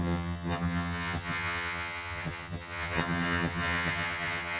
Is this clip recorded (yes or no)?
no